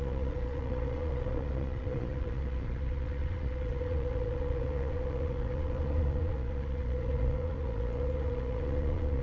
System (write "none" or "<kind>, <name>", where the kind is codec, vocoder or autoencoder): vocoder, Vocos